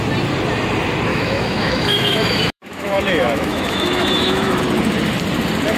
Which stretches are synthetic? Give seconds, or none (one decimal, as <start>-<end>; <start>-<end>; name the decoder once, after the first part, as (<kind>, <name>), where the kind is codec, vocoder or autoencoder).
1.1-4.6 (autoencoder, DAC-VAE)